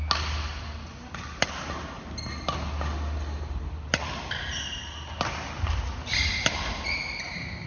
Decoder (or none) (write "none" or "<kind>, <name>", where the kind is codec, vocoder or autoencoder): none